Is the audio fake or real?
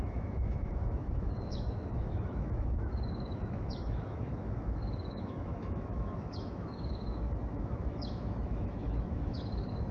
fake